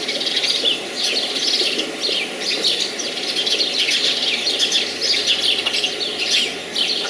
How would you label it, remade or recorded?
recorded